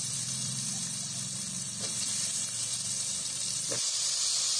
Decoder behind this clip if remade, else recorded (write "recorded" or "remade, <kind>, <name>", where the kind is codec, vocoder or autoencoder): remade, vocoder, BigVGAN v2